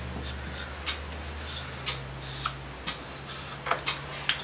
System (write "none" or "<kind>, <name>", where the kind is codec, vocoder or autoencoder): none